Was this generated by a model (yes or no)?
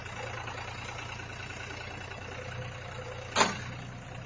no